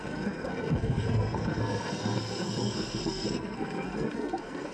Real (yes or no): no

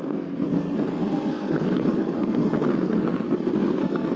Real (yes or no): no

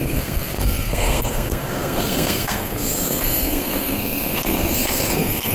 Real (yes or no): no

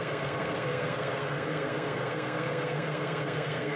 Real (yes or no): no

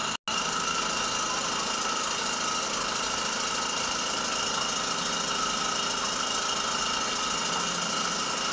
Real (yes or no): yes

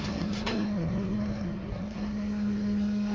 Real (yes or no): no